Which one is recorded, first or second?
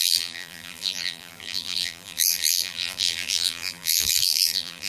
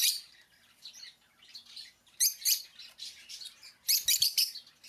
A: second